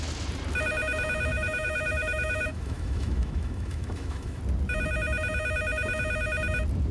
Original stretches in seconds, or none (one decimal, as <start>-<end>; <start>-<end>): 0.0-1.3; 4.4-6.9